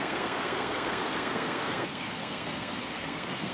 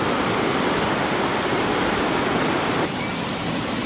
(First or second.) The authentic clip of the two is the second